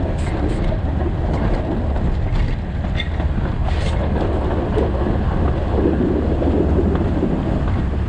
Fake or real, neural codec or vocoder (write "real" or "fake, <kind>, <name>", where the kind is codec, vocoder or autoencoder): real